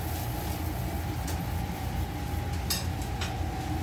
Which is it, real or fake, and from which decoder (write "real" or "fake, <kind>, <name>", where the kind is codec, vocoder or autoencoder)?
real